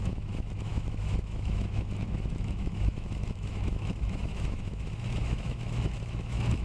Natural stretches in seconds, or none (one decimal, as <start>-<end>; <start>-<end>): none